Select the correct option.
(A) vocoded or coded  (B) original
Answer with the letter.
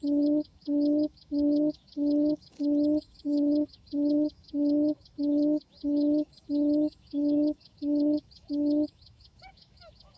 A